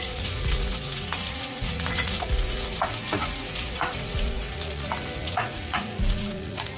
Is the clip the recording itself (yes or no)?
no